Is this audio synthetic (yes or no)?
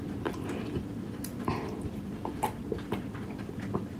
yes